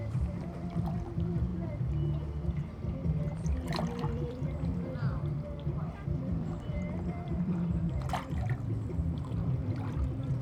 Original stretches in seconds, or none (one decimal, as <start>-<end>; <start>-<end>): 1.5-3.8